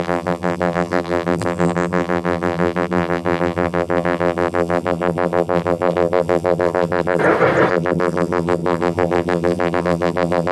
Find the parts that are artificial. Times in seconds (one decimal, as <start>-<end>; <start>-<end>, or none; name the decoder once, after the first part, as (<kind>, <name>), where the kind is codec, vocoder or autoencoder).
0.0-7.2 (vocoder, BigVGAN v2); 7.7-10.5